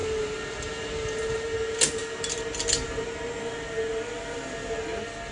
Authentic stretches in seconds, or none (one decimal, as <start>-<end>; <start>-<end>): 0.0-5.3